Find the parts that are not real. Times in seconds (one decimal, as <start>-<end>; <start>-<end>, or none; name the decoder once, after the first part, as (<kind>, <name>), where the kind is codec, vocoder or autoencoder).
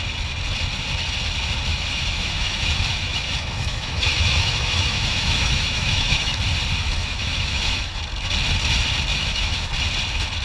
1.7-6.4 (autoencoder, DAC-VAE); 7.0-8.0; 9.1-9.7